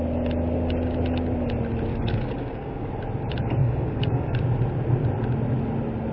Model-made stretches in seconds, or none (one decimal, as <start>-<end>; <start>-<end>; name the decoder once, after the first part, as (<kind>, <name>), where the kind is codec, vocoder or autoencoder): 1.9-2.9 (codec, DAC); 3.6-4.4